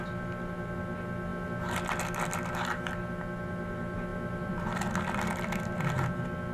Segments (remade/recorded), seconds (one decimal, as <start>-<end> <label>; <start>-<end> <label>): 0.0-6.5 recorded